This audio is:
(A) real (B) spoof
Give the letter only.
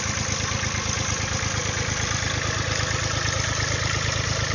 A